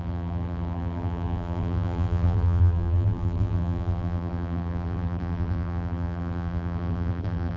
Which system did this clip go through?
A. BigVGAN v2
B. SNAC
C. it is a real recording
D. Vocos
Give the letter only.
A